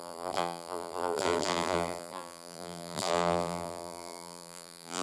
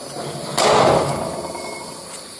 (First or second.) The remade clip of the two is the first